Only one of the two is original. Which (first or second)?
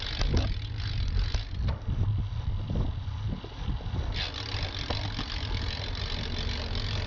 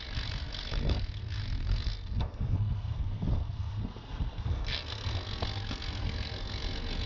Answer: first